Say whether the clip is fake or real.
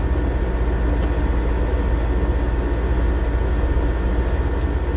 real